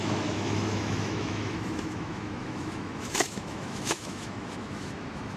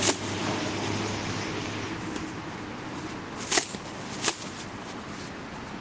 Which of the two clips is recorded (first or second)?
second